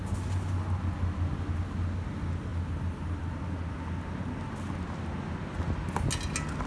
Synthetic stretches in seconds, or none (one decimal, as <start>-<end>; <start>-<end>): none